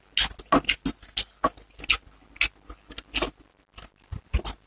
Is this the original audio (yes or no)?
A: yes